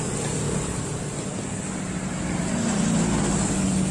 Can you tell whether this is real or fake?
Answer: real